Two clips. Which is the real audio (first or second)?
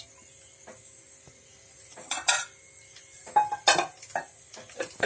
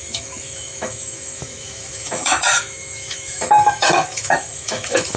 first